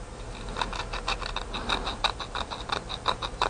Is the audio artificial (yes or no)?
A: no